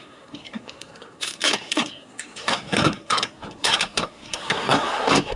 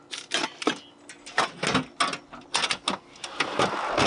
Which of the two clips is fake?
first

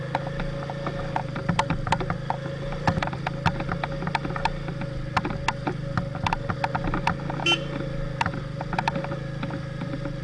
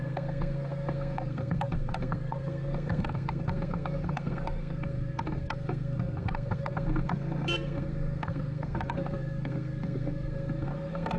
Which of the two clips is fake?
second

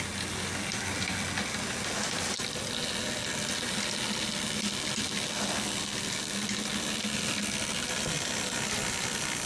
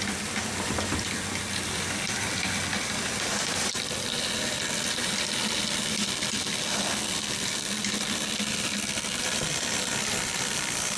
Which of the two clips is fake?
second